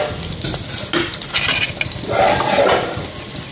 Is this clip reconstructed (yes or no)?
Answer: no